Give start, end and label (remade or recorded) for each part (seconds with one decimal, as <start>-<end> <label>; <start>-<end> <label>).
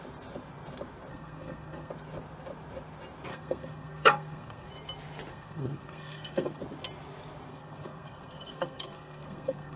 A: 0.0-1.1 recorded; 1.1-1.9 remade; 1.9-3.3 recorded; 3.3-4.7 remade; 4.7-5.3 recorded; 5.3-6.6 remade; 6.6-7.5 recorded; 7.5-9.8 remade